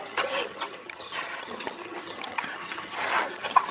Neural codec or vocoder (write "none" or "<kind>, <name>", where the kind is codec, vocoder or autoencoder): vocoder, HiFi-GAN